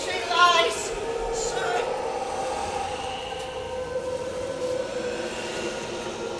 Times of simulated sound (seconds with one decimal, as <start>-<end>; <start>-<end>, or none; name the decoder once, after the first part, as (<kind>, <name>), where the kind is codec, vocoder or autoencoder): none

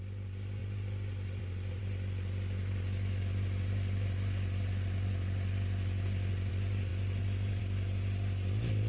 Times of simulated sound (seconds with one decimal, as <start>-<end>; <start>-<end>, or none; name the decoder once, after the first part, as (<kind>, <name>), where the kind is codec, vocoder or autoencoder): none

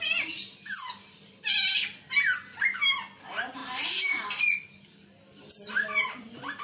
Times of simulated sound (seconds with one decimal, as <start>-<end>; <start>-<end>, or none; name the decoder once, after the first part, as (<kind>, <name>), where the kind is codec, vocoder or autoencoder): none

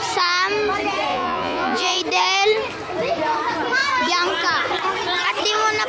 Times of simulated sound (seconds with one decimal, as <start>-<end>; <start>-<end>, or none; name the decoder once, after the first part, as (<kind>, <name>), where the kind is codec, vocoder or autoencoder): 1.1-2.0 (vocoder, Vocos)

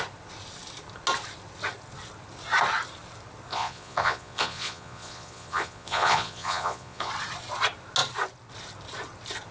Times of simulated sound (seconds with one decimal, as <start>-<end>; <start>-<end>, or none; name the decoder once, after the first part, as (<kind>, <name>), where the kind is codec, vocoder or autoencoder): 3.5-7.1 (vocoder, Vocos)